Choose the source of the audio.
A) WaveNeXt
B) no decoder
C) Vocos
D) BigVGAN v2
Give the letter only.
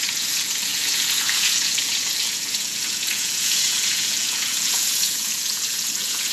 C